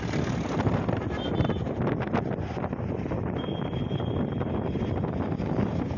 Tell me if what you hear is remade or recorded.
recorded